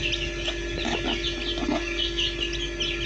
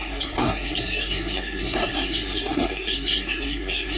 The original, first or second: first